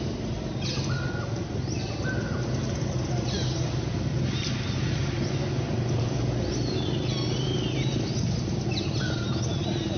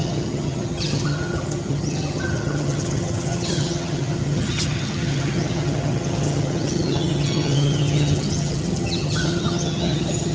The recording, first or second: first